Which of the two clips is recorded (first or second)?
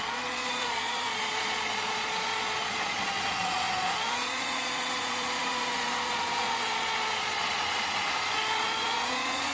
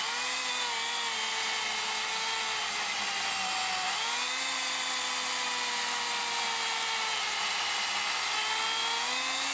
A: second